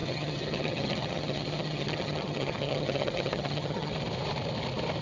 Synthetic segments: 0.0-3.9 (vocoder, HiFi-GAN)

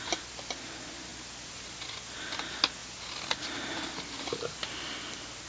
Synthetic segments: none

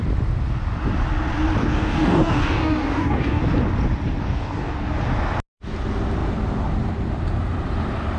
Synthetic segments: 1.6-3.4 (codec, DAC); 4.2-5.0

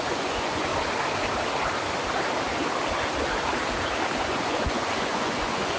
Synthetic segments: 0.0-0.7 (vocoder, Vocos); 4.2-5.8

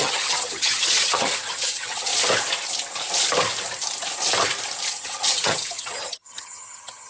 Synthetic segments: 0.0-2.1 (vocoder, HiFi-GAN); 4.9-7.1

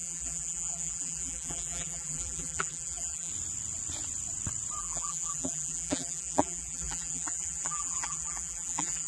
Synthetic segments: 0.0-3.3 (vocoder, BigVGAN v2); 4.8-9.1